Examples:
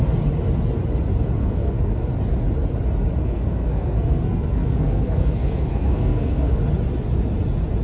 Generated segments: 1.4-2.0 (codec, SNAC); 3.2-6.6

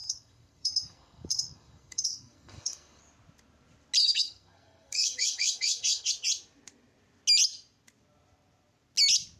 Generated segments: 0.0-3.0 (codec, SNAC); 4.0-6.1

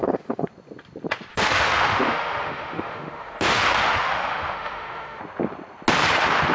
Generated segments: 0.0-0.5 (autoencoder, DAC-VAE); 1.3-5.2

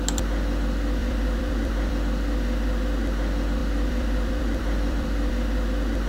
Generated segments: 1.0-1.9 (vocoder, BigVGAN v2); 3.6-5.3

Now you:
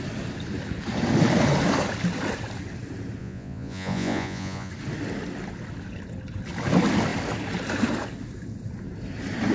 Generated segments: 3.2-4.7 (vocoder, Vocos)

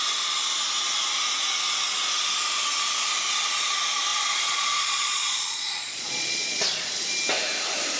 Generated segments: 4.1-6.9 (vocoder, Vocos)

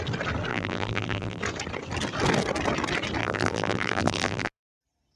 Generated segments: 0.5-1.4 (vocoder, BigVGAN v2); 3.2-4.7

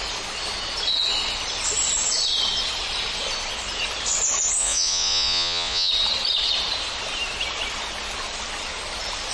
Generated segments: 4.6-5.9 (vocoder, Vocos)